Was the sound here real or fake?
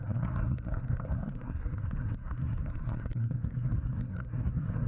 fake